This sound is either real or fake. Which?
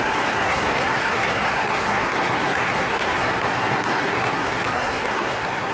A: fake